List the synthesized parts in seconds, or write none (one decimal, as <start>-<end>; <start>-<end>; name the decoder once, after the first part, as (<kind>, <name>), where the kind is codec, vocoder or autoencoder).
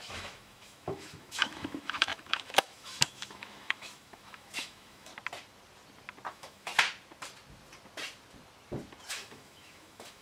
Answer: 0.0-5.1 (autoencoder, DAC-VAE); 6.3-6.7; 9.1-10.2